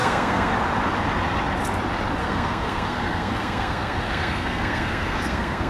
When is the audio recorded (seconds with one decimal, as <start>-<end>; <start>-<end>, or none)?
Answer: 0.5-2.2